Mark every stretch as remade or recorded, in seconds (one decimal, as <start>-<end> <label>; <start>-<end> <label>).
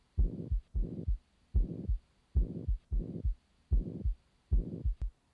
0.0-5.3 recorded